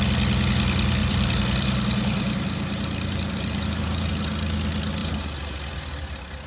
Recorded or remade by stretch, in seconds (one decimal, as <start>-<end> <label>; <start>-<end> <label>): 0.0-1.0 recorded; 1.0-4.1 remade; 4.1-5.0 recorded; 5.0-5.6 remade; 5.6-6.5 recorded